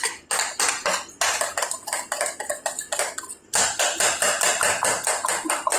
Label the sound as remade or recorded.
recorded